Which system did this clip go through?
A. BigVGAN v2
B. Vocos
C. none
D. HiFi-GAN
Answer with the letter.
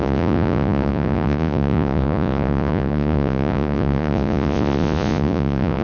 B